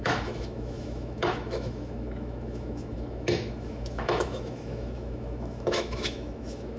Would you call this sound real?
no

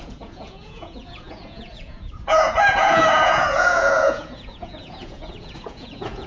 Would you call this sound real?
no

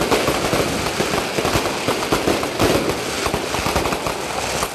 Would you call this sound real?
yes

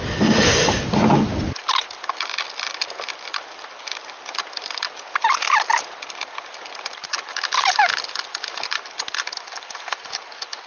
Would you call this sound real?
yes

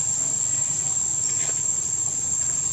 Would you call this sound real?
yes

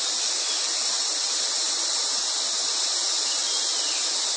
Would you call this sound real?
yes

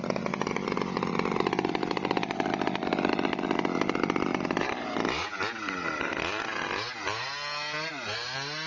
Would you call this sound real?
yes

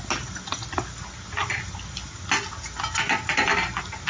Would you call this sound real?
yes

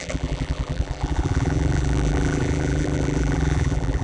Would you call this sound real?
no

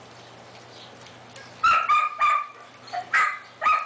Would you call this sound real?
yes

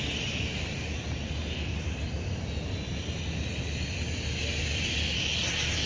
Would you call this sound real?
yes